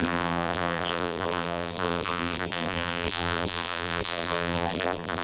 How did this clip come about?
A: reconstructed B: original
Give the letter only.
A